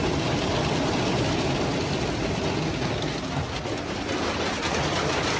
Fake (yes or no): no